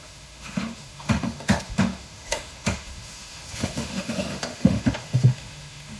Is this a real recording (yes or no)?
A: no